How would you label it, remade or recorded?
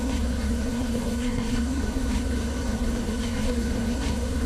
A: remade